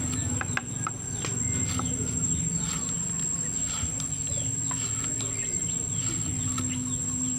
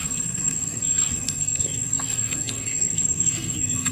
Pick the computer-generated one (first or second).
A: second